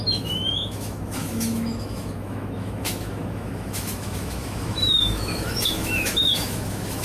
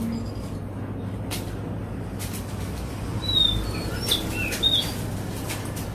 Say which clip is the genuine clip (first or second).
second